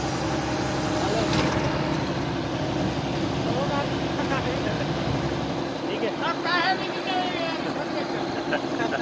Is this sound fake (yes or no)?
no